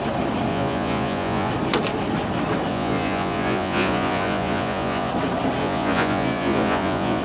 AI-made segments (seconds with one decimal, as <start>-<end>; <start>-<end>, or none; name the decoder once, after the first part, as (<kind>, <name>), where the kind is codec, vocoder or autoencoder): 0.5-1.5 (vocoder, Vocos); 2.7-5.1; 5.6-7.2